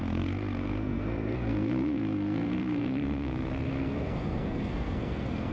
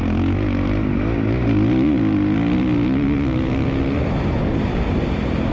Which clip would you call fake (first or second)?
first